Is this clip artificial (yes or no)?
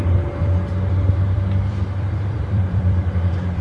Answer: yes